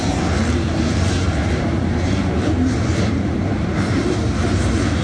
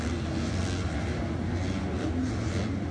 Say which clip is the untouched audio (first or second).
second